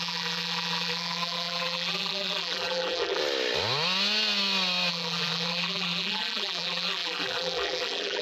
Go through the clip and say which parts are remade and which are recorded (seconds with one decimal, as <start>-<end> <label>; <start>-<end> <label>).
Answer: 0.0-3.2 remade; 3.2-4.9 recorded; 4.9-8.2 remade